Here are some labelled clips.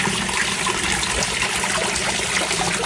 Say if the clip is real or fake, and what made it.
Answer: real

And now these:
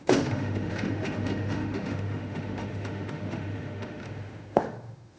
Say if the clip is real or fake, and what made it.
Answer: fake, autoencoder, DAC-VAE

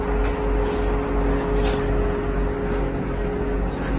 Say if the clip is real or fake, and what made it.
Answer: real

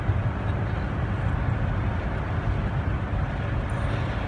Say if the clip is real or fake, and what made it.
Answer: real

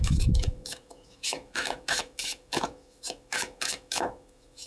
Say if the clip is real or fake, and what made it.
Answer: fake, autoencoder, DAC-VAE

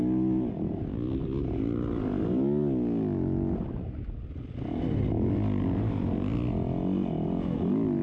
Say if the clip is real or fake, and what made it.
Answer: real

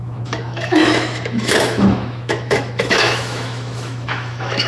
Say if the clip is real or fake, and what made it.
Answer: fake, autoencoder, DAC-VAE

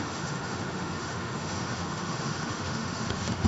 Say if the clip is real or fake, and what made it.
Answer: fake, autoencoder, DAC-VAE